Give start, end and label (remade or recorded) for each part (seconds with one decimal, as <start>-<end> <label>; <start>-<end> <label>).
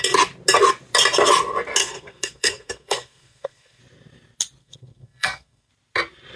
0.0-1.8 recorded; 1.8-3.8 remade; 3.8-4.6 recorded; 4.6-5.7 remade; 5.7-6.4 recorded